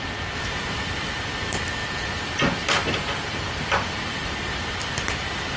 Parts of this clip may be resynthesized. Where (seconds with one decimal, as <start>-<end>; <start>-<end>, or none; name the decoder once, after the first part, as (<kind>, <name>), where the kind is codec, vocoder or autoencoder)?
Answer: 0.0-1.8 (vocoder, BigVGAN v2); 4.5-5.6